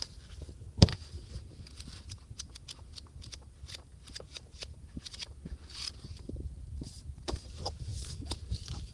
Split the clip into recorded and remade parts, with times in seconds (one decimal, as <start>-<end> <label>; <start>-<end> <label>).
0.0-0.9 remade; 0.9-4.2 recorded; 4.2-4.7 remade; 4.7-7.5 recorded; 7.5-8.9 remade